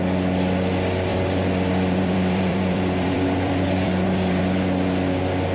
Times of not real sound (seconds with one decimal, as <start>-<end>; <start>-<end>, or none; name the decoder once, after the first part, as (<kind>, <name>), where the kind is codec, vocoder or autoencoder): 1.1-4.4 (vocoder, BigVGAN v2)